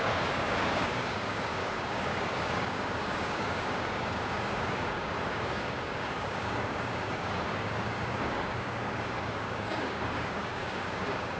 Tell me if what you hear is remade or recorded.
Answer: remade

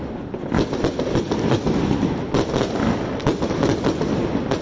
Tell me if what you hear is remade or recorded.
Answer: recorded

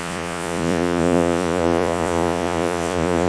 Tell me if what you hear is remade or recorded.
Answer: remade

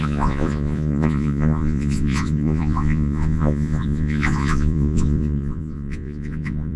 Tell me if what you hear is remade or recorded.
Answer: remade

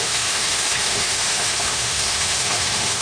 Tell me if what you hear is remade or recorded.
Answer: remade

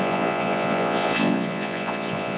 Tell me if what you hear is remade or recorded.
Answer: remade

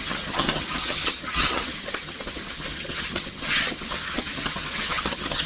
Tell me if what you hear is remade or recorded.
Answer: remade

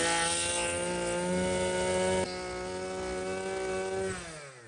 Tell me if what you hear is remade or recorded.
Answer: recorded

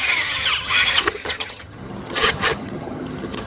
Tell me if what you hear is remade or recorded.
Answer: remade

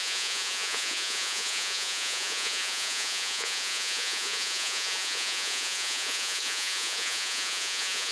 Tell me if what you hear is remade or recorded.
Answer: remade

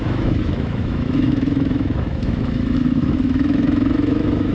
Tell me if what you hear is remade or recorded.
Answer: remade